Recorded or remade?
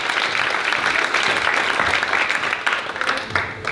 recorded